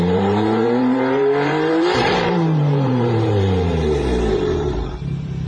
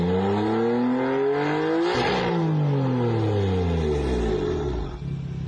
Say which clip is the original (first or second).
second